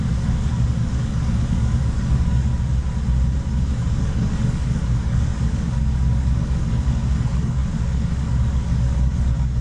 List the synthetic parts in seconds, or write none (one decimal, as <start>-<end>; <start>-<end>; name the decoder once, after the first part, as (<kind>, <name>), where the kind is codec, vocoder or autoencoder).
0.0-2.5 (codec, DAC); 3.5-9.6